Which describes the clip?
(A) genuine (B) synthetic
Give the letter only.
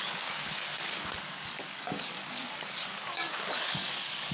B